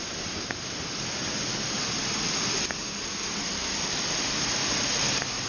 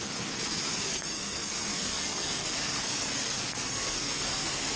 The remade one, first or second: second